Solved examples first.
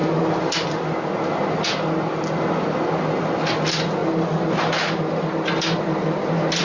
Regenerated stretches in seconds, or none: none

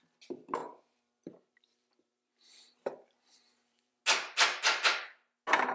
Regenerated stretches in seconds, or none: 0.6-4.0 (vocoder, BigVGAN v2)

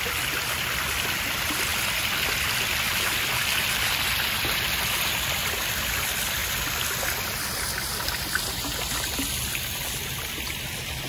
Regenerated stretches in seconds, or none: none

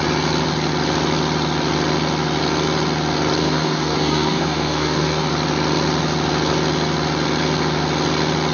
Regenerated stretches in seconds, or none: 3.4-5.3 (codec, SNAC)

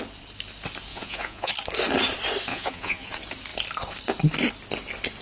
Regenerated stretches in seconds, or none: 0.9-1.5 (vocoder, Vocos); 2.5-3.1

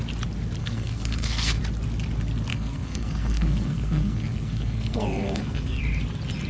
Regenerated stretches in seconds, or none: 0.6-1.6 (codec, SNAC); 2.5-5.8

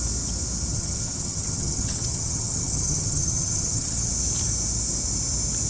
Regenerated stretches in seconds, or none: 0.7-4.1 (vocoder, HiFi-GAN)

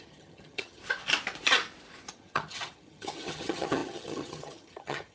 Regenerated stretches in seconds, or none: 0.0-0.8 (vocoder, HiFi-GAN); 2.1-5.1